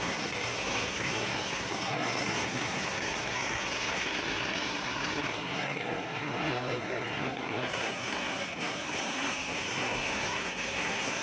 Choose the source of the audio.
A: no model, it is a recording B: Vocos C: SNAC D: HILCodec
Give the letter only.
C